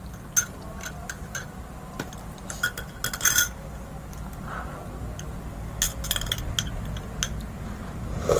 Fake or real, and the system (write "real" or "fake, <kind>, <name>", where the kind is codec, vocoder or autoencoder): real